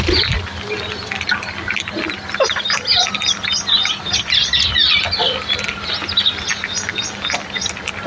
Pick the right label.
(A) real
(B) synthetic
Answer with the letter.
A